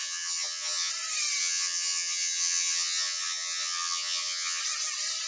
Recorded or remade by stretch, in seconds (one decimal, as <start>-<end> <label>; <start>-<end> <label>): 0.0-0.9 remade; 0.9-1.4 recorded; 1.4-4.6 remade; 4.6-5.3 recorded